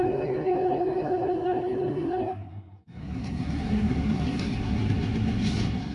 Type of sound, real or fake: fake